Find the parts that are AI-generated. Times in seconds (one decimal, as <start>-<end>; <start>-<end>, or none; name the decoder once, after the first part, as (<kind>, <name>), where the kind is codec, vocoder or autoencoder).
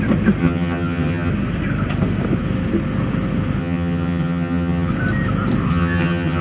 0.4-1.3 (vocoder, HiFi-GAN); 3.6-4.9; 5.7-6.4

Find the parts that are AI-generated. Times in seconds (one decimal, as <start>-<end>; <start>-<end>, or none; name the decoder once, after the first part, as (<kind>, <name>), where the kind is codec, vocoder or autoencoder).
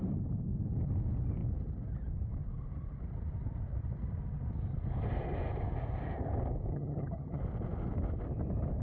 6.7-7.4 (vocoder, HiFi-GAN)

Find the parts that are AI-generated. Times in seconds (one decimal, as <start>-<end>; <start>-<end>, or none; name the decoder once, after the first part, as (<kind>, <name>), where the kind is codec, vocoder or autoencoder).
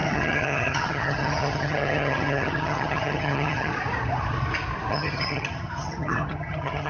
0.0-3.7 (vocoder, HiFi-GAN); 4.9-6.9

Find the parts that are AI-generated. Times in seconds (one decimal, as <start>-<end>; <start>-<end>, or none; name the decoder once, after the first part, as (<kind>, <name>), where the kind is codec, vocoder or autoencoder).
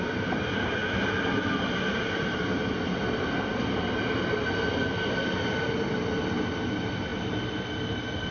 none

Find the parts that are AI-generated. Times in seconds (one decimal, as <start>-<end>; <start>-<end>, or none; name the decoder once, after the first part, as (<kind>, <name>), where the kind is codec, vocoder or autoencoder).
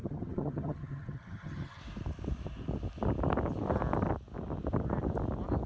0.0-1.8 (vocoder, HiFi-GAN)